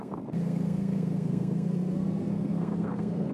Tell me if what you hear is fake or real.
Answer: fake